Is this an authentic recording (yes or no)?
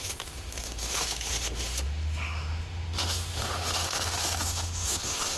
no